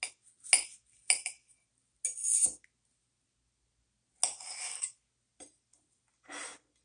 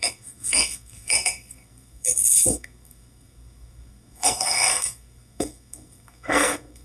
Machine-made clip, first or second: second